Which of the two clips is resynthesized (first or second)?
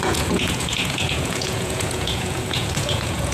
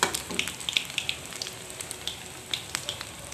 first